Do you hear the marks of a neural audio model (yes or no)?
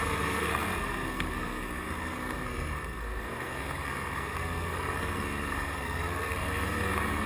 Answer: yes